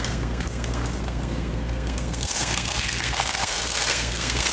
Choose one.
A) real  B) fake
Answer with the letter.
B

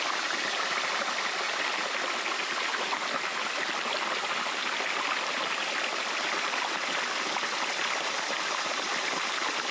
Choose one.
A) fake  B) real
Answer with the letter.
B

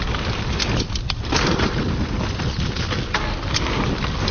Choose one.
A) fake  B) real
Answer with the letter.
B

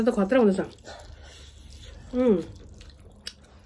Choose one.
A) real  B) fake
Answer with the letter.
A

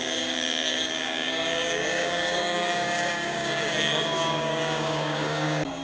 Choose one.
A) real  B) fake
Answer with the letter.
B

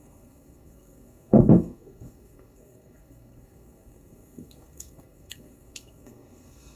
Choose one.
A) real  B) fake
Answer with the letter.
B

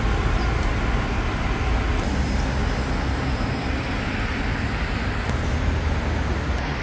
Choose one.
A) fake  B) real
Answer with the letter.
B